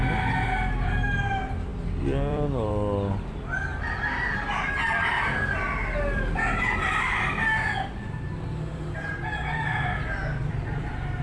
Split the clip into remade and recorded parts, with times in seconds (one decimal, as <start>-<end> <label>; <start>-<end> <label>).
0.0-1.7 recorded; 1.7-2.7 remade; 2.7-3.7 recorded; 3.7-8.2 remade; 8.2-10.4 recorded; 10.4-11.2 remade